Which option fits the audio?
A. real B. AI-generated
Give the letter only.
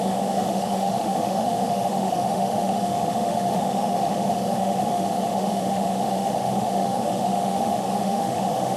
B